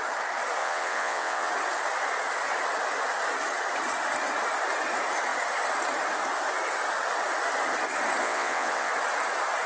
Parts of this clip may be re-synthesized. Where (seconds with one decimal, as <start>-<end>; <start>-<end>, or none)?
0.6-1.5; 8.2-8.9